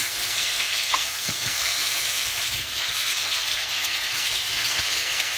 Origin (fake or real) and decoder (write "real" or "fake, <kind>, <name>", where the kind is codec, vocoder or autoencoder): fake, codec, SNAC